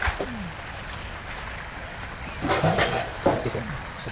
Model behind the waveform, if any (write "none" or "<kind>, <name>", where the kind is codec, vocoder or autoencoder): none